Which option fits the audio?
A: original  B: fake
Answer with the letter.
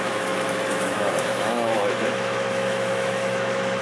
B